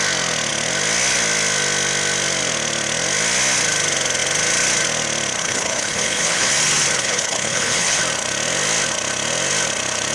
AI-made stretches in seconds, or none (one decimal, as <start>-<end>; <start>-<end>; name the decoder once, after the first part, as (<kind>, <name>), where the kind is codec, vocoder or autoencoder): 5.4-6.5 (codec, HILCodec); 7.0-8.0